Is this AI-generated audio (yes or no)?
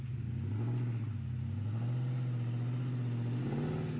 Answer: no